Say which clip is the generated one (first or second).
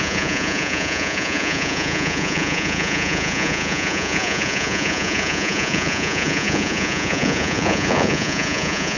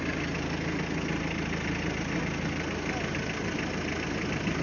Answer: first